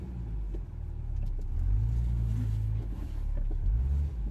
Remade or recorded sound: recorded